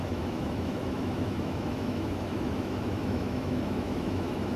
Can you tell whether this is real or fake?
fake